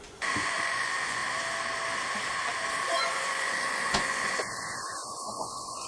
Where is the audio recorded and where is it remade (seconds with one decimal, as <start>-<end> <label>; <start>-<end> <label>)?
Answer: 0.0-1.2 remade; 1.2-2.8 recorded; 2.8-5.9 remade